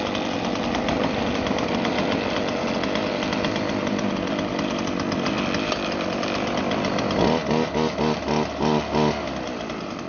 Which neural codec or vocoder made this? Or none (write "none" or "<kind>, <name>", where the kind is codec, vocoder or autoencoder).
none